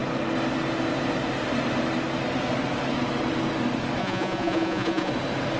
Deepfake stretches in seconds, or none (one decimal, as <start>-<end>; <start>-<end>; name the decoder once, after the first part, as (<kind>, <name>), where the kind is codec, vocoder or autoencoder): 4.0-5.1 (vocoder, Vocos)